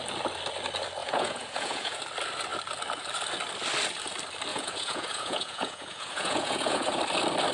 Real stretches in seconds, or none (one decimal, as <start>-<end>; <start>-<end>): 0.0-1.0; 2.0-4.5; 7.0-7.5